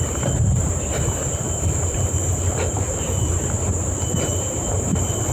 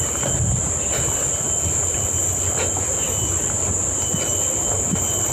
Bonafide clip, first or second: second